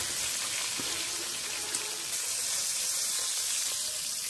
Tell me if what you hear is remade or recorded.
recorded